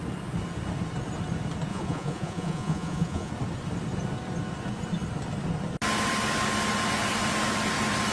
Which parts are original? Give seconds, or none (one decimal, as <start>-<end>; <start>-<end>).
0.0-1.7; 3.3-8.1

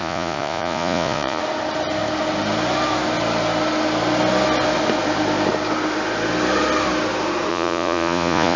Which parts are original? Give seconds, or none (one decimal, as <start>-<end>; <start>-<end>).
1.4-7.5

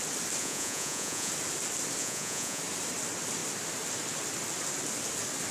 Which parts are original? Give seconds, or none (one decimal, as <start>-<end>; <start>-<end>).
0.0-0.4; 1.3-2.0; 2.6-5.5

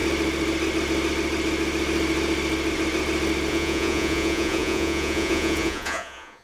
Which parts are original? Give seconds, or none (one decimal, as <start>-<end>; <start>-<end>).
0.0-3.5

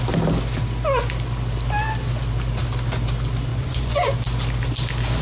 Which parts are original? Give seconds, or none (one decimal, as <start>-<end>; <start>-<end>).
0.0-3.5; 4.1-5.2

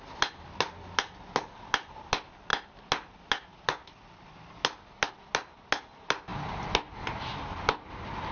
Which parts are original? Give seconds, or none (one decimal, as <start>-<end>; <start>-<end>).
0.0-8.3

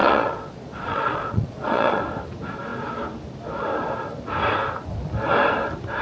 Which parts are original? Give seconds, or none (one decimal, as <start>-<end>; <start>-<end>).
2.0-6.0